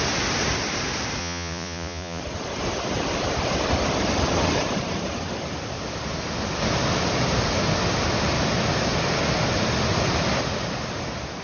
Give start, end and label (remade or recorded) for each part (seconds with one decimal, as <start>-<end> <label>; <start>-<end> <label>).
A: 0.0-1.2 recorded; 1.2-2.2 remade; 2.2-11.4 recorded